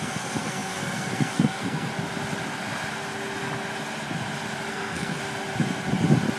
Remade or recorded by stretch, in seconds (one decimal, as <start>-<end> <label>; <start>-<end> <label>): 0.0-1.9 remade; 1.9-4.7 recorded; 4.7-5.2 remade; 5.2-6.4 recorded